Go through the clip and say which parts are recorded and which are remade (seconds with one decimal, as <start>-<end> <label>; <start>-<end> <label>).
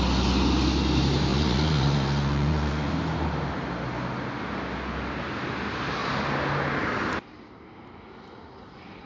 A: 0.0-1.3 recorded; 1.3-2.9 remade; 2.9-9.1 recorded